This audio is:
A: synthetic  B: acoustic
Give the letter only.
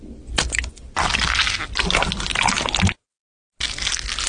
B